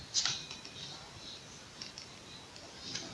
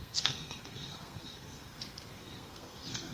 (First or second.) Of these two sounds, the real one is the first